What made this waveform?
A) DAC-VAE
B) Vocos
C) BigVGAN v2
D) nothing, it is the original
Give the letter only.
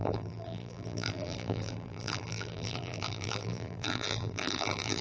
C